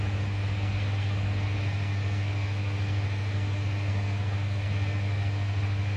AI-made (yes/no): yes